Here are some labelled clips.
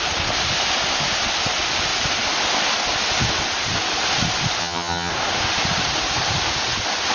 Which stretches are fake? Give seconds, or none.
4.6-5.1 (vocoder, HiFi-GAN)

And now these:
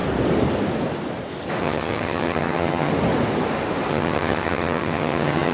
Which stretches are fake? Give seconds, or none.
1.6-2.9 (vocoder, HiFi-GAN); 3.9-5.5

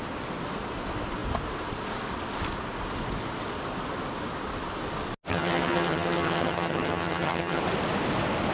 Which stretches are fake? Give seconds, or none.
5.3-7.6 (vocoder, HiFi-GAN)

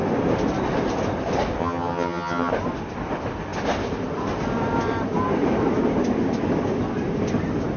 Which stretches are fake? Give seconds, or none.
1.6-2.5 (vocoder, HiFi-GAN)

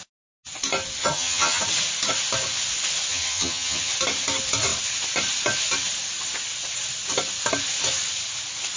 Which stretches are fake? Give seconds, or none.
1.0-1.6 (vocoder, HiFi-GAN); 3.1-3.9